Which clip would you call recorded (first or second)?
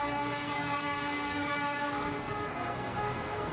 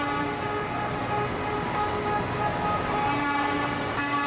second